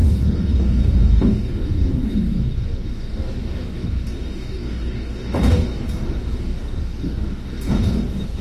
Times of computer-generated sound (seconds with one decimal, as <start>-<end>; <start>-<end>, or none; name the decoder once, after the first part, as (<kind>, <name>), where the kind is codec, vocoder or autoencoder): 0.0-8.4 (codec, DAC)

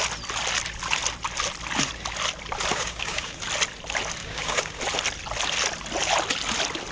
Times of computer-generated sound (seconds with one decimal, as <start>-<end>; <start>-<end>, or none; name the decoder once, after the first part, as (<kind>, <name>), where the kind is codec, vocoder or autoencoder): 2.7-3.4 (codec, DAC); 4.2-4.8